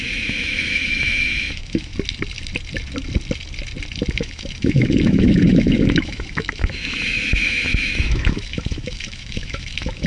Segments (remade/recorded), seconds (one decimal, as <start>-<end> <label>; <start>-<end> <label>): 0.0-1.9 remade; 1.9-4.1 recorded; 4.1-10.1 remade